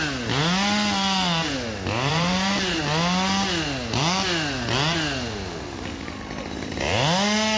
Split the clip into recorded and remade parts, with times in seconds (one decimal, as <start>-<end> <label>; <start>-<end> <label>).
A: 0.0-2.1 recorded; 2.1-2.8 remade; 2.8-7.6 recorded